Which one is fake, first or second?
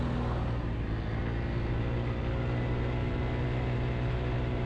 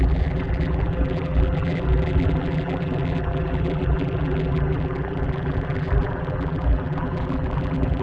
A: second